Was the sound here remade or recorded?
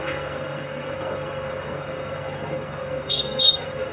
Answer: remade